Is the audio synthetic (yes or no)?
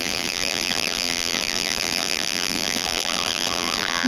yes